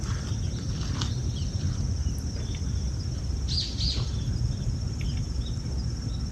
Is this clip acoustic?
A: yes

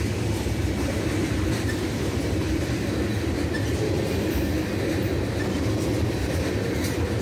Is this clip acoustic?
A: yes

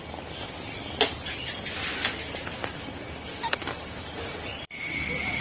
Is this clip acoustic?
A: yes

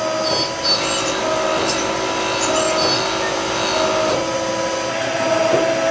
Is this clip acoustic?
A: yes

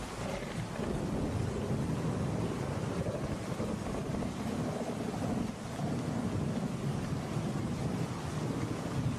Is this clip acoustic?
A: yes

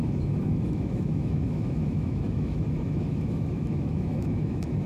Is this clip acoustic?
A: no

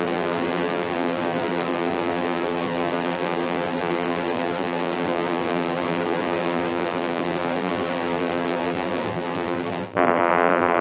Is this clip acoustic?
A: no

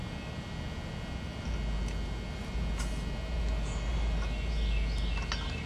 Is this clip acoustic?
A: yes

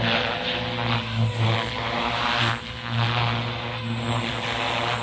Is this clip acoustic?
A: yes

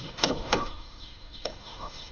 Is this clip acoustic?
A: no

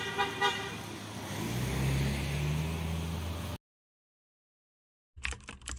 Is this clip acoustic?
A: yes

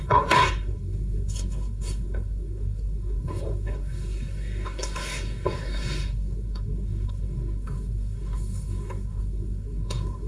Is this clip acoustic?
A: no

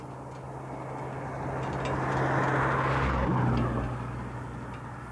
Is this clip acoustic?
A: yes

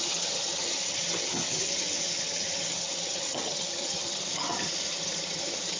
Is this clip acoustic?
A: no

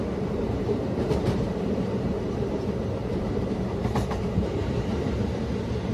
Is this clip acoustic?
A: no